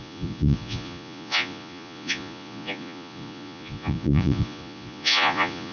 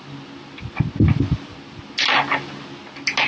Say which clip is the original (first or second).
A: second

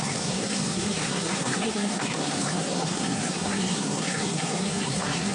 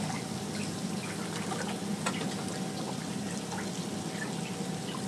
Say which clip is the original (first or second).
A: second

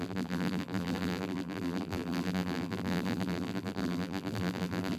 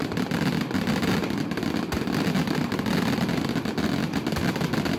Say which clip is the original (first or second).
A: second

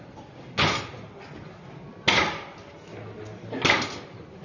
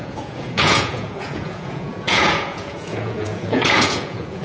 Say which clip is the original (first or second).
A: first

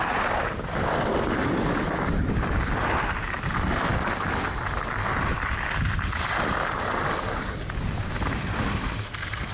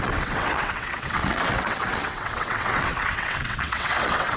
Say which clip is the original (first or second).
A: first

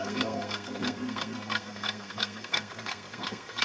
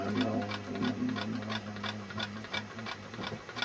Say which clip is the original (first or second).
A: second